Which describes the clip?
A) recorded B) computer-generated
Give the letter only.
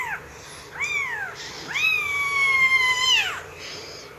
A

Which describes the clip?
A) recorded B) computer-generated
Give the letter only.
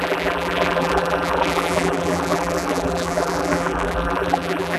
B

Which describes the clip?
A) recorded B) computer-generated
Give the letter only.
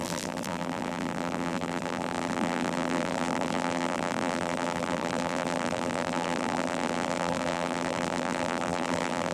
B